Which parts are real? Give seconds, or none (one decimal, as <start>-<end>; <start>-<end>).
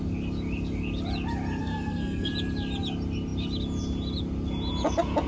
0.0-1.6; 2.3-5.3